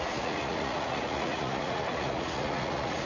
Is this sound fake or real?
fake